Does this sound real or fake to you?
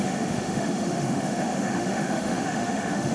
fake